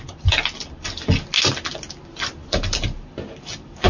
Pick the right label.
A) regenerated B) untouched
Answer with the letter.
B